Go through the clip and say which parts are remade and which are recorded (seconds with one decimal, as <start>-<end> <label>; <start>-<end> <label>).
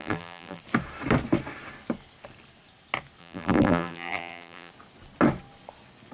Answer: 0.0-0.6 remade; 0.6-3.2 recorded; 3.2-4.7 remade; 4.7-6.1 recorded